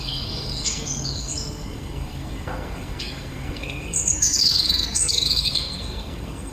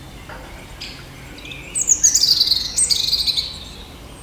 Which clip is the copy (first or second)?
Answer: first